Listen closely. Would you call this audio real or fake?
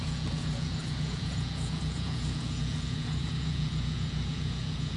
fake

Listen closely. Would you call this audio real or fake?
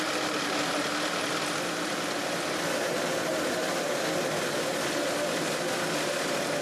real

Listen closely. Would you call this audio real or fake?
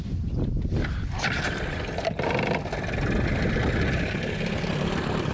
real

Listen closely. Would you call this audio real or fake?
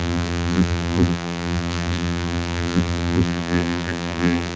fake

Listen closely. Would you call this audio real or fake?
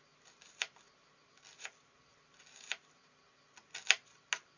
real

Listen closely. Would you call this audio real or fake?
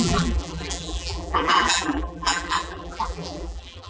fake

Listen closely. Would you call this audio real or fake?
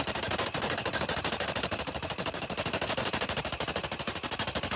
fake